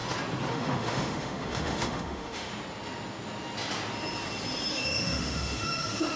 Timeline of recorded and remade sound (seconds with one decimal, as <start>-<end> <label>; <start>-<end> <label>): 0.0-0.5 recorded; 0.5-2.5 remade; 2.5-4.7 recorded; 4.7-6.2 remade